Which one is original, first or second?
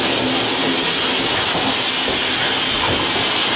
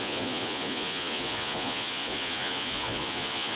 first